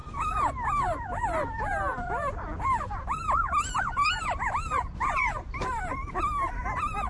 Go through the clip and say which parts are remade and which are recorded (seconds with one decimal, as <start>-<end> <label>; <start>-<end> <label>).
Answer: 0.0-0.5 remade; 0.5-7.1 recorded